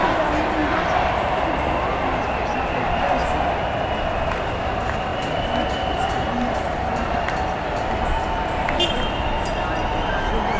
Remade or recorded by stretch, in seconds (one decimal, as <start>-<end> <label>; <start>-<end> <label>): 0.0-10.6 recorded